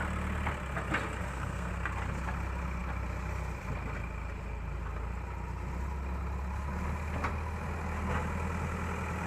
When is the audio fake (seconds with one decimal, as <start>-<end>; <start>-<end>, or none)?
1.2-1.7

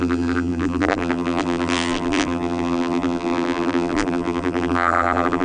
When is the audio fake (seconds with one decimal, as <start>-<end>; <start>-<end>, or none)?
0.0-5.4

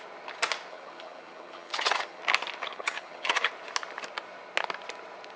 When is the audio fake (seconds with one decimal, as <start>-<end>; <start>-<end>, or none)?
0.7-2.2; 2.6-3.5